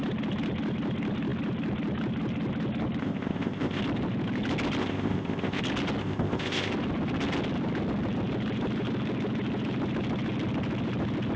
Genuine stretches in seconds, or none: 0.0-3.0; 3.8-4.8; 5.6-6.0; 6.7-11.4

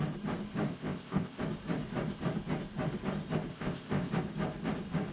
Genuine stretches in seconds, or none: 0.0-0.7; 1.4-3.5; 4.1-5.1

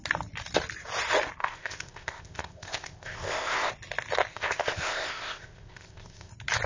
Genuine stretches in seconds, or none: 0.0-1.4; 3.7-4.3; 6.3-6.7

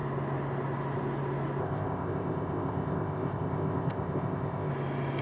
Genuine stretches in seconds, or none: 0.0-1.6; 4.7-5.2